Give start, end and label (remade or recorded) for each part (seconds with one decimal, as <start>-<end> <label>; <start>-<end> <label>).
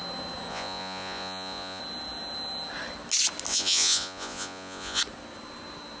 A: 0.0-0.5 recorded; 0.5-1.8 remade; 1.8-3.5 recorded; 3.5-5.0 remade; 5.0-6.0 recorded